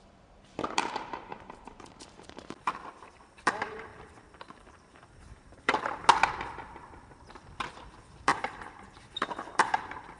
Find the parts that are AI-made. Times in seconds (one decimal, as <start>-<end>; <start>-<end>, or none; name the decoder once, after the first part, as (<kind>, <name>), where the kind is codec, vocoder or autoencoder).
0.0-6.0 (vocoder, BigVGAN v2); 7.8-10.2